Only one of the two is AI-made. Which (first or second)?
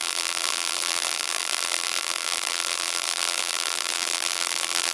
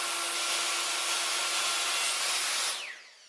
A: first